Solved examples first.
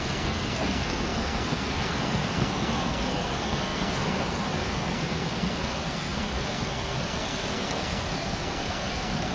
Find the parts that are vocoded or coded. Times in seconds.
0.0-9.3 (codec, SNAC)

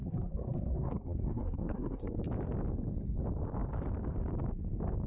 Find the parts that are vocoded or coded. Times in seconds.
0.0-2.2 (codec, SNAC)